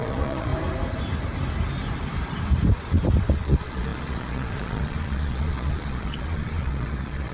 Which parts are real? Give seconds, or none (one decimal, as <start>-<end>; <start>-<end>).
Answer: 0.5-3.3